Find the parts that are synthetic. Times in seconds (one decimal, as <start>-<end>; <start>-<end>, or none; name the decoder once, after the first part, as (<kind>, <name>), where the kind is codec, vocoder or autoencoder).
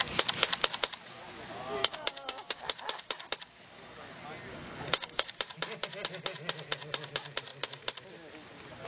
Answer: 1.8-2.6 (codec, DAC); 4.5-5.3